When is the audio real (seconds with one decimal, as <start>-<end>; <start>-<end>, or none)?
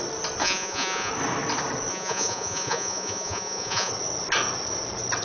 0.0-0.4; 1.1-1.9; 3.9-5.2